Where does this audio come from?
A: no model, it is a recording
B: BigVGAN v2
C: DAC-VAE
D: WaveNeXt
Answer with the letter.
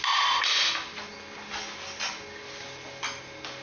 A